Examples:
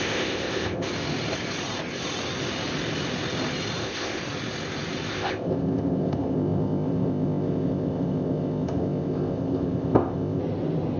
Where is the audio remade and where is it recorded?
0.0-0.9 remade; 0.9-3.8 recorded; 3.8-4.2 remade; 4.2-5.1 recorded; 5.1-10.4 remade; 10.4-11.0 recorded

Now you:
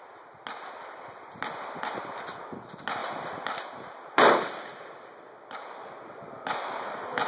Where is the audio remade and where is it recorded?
0.0-7.3 recorded

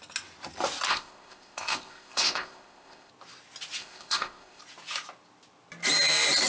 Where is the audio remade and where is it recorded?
0.0-0.9 recorded; 0.9-3.1 remade; 3.1-3.8 recorded; 3.8-4.6 remade; 4.6-6.5 recorded